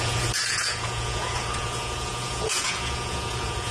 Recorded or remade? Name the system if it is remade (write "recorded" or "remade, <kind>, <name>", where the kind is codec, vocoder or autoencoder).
remade, vocoder, Vocos